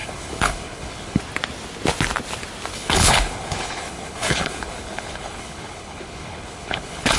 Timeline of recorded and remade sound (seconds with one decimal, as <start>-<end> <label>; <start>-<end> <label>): 0.0-1.2 remade; 1.2-2.7 recorded; 2.7-7.2 remade